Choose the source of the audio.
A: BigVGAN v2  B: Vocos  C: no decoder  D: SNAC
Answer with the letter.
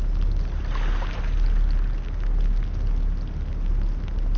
C